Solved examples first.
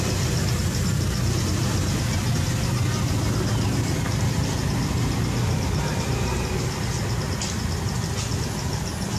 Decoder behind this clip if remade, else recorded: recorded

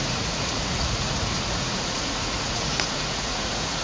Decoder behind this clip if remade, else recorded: remade, vocoder, Vocos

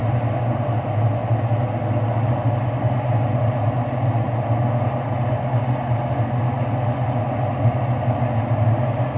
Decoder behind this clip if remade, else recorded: recorded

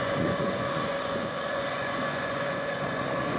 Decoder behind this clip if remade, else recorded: remade, vocoder, Vocos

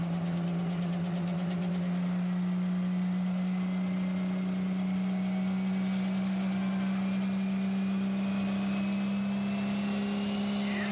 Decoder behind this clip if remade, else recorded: recorded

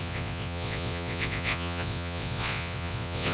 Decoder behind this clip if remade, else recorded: remade, vocoder, Vocos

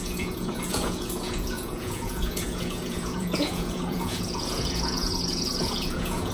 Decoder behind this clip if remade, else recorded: remade, vocoder, Vocos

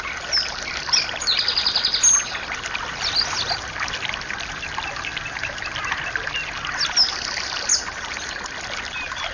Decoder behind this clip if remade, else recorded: recorded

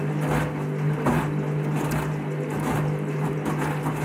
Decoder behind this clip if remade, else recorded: recorded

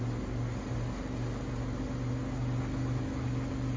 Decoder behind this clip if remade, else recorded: recorded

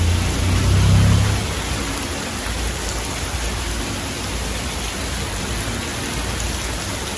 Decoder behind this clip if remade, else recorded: recorded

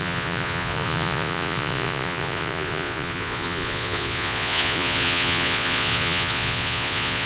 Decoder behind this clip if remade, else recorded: remade, vocoder, Vocos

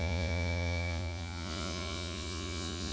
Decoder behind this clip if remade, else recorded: remade, vocoder, Vocos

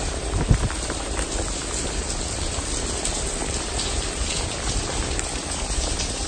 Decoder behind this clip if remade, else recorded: recorded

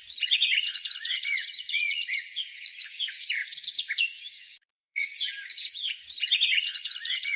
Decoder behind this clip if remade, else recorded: remade, vocoder, Vocos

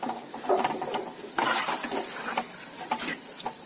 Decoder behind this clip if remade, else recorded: recorded